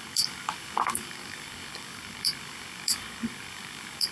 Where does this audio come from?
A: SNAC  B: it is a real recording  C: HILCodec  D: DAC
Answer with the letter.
D